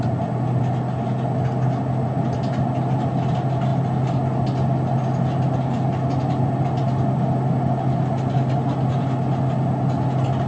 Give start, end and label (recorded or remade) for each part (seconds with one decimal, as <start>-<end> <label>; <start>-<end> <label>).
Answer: 0.0-10.5 recorded